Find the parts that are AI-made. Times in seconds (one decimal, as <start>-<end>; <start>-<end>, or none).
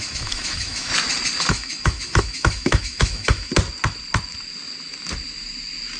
0.0-0.9; 1.5-3.5